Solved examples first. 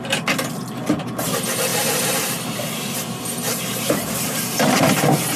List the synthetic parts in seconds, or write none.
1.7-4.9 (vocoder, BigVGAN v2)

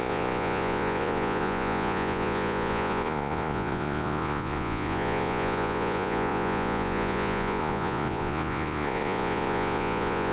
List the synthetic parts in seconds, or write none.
0.0-10.3 (vocoder, Vocos)

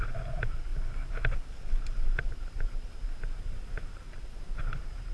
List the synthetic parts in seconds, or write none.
0.7-1.8 (vocoder, BigVGAN v2)

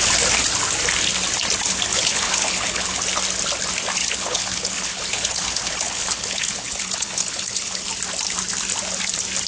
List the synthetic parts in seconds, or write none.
1.9-3.0 (codec, HILCodec); 4.0-7.9

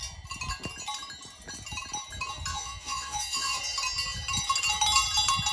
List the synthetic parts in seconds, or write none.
2.5-3.6 (vocoder, Vocos)